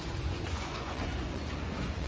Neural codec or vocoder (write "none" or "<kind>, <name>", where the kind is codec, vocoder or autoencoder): vocoder, Vocos